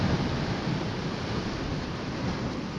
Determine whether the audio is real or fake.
real